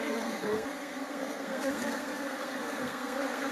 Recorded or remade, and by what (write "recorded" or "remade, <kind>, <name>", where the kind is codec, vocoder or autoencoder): remade, codec, SNAC